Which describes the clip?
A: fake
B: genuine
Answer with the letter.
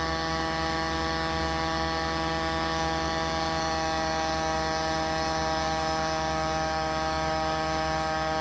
A